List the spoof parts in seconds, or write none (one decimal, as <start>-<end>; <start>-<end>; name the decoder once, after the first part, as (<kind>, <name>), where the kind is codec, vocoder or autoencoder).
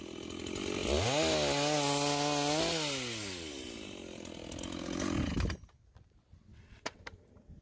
6.5-7.0 (vocoder, WaveNeXt)